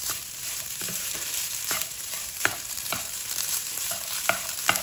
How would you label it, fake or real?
fake